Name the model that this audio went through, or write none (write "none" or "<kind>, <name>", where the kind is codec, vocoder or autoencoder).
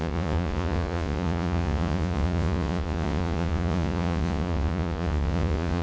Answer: vocoder, Vocos